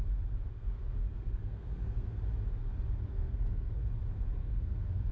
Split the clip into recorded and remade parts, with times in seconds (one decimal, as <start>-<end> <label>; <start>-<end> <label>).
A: 0.0-0.5 recorded; 0.5-2.2 remade; 2.2-3.1 recorded; 3.1-3.8 remade; 3.8-4.4 recorded; 4.4-5.1 remade